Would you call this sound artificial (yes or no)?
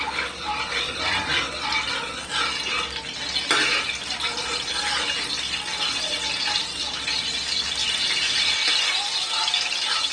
no